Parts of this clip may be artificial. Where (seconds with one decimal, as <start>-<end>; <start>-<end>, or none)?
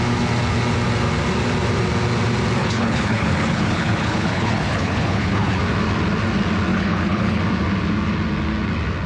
2.6-5.6; 6.7-7.4